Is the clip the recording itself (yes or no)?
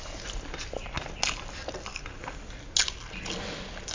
yes